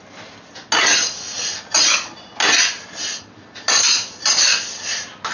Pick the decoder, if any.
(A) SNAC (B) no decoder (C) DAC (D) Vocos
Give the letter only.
B